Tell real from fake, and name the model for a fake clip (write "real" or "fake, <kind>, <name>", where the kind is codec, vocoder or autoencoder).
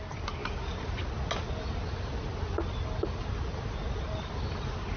real